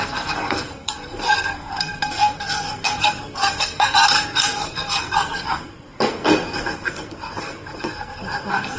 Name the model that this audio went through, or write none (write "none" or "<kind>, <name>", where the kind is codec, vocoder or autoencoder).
codec, SNAC